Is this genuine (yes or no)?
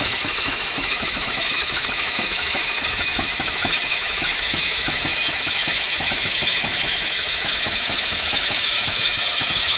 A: no